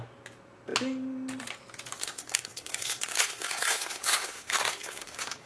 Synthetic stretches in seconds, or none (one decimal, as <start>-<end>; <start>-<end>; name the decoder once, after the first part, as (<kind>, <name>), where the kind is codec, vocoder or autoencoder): 2.0-5.5 (codec, SNAC)